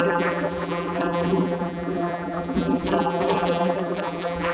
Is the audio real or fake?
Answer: fake